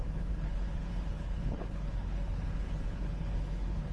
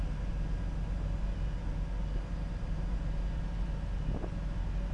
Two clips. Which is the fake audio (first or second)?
first